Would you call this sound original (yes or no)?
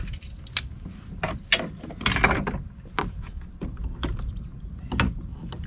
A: yes